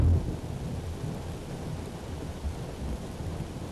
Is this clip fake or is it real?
real